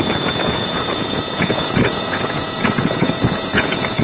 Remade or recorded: remade